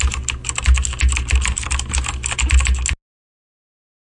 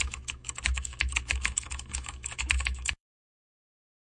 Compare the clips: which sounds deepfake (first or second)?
second